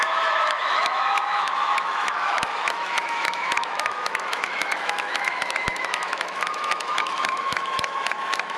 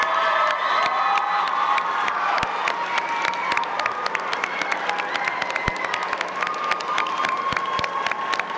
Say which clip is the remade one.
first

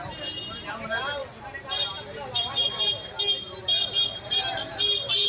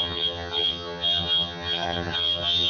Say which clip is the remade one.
second